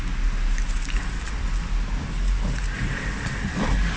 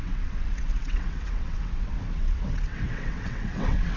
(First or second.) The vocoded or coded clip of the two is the second